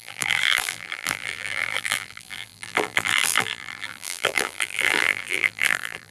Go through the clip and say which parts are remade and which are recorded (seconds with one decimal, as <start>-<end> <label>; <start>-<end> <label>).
0.0-6.1 remade